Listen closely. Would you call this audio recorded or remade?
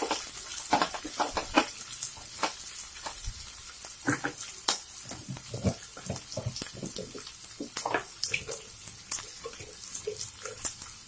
recorded